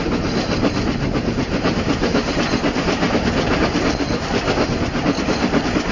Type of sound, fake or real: real